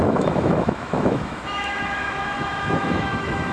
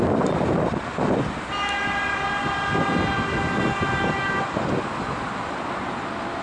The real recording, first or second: second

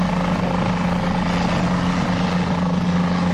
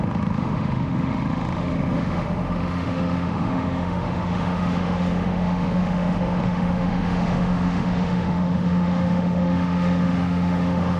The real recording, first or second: first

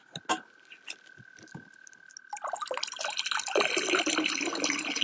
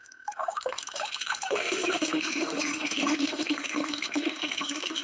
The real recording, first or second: first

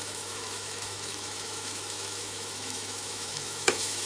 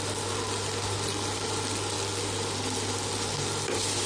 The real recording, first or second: second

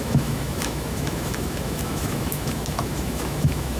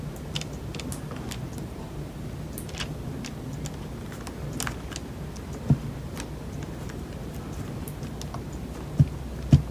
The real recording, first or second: second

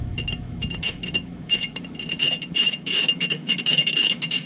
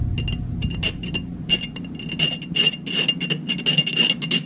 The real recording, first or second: second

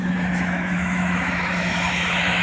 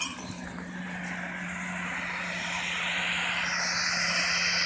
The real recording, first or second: second